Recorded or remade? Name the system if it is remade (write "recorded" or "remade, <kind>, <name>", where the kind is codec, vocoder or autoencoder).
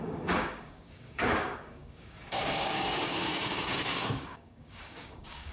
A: remade, codec, DAC